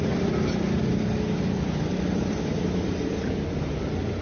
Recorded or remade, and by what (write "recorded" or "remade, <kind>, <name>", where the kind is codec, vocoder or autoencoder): recorded